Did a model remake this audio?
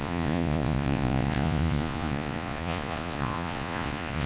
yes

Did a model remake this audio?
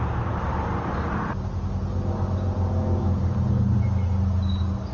no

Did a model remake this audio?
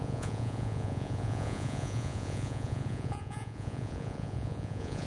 yes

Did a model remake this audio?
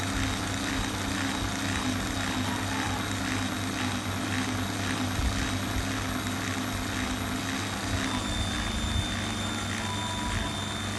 no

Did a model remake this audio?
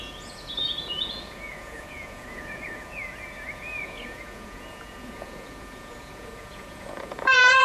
yes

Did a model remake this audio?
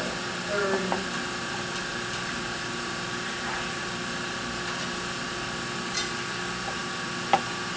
no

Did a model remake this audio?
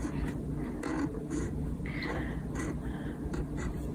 no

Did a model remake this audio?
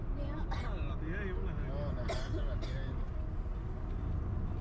no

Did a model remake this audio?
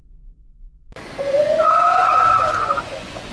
yes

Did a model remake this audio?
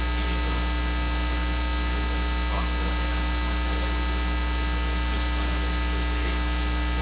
no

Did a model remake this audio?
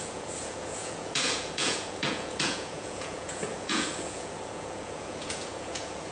yes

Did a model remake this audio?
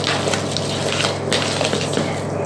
no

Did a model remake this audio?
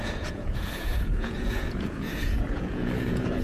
yes